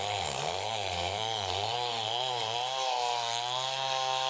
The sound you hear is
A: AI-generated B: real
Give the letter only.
A